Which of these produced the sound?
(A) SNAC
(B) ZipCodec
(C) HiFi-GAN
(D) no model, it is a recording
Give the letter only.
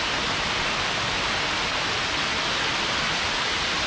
D